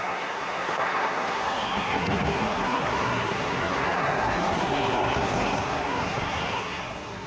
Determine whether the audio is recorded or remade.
remade